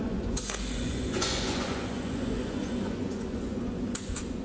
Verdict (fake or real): fake